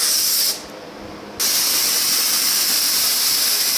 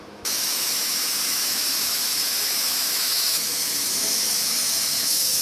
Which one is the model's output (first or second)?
second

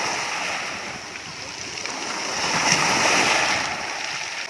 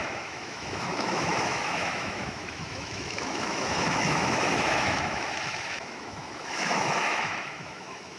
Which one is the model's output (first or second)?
second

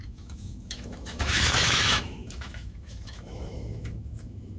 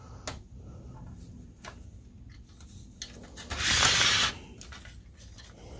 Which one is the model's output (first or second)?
first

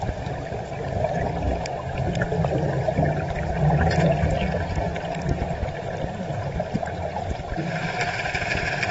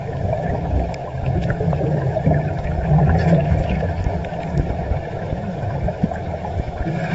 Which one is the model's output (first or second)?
second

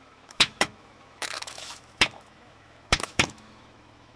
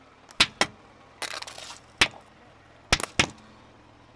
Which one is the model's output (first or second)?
first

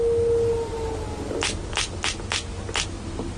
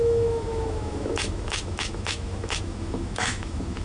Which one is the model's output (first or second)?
second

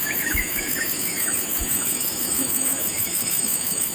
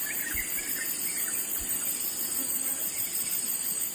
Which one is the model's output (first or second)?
first